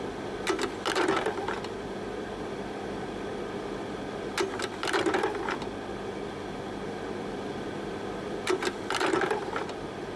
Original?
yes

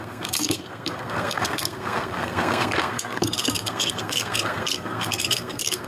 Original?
no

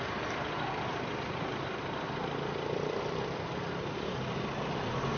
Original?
yes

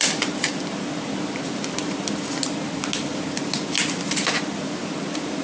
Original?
yes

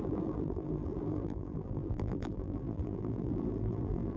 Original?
no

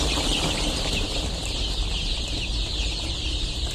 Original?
yes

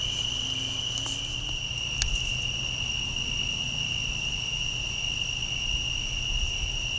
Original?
yes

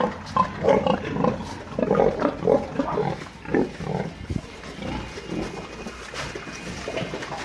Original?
yes